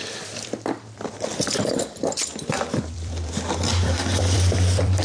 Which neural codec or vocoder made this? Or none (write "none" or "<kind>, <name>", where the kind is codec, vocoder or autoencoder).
vocoder, BigVGAN v2